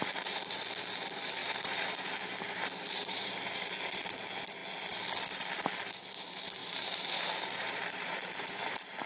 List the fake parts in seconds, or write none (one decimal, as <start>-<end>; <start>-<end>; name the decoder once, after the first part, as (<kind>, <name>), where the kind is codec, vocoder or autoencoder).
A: 1.4-3.7 (vocoder, BigVGAN v2); 6.6-9.1